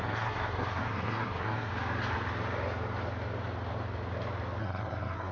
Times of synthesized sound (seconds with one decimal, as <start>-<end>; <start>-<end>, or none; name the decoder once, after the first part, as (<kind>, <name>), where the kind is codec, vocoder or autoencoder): 0.0-1.7 (codec, SNAC); 4.6-5.3